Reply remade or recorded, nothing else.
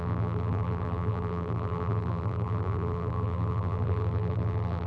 remade